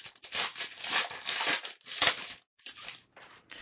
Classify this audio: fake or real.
fake